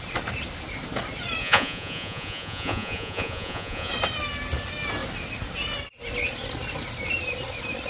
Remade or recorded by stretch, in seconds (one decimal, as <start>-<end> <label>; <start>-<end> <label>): 0.0-1.4 recorded; 1.4-3.9 remade; 3.9-7.9 recorded